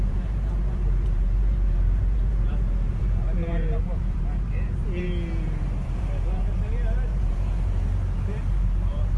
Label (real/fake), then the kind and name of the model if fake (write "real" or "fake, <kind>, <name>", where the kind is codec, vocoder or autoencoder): fake, vocoder, BigVGAN v2